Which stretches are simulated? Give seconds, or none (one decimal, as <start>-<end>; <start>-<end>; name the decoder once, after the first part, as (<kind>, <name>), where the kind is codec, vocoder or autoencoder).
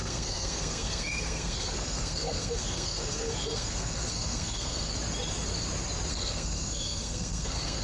0.0-4.9 (codec, SNAC); 6.1-7.8